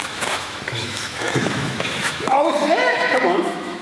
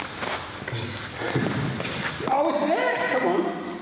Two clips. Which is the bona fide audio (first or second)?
second